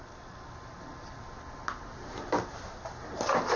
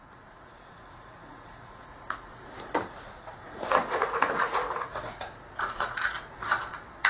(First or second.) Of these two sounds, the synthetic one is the second